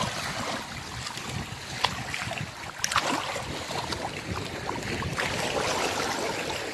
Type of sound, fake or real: real